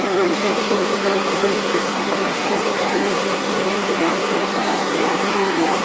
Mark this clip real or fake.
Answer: fake